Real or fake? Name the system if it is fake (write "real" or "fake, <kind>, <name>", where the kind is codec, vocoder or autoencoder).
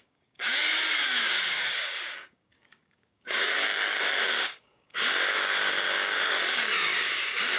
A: fake, codec, DAC